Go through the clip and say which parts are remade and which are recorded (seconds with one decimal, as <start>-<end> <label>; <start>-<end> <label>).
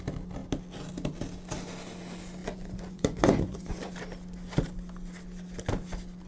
0.0-2.4 recorded; 2.4-3.9 remade; 3.9-6.3 recorded